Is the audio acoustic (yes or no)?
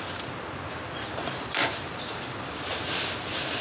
no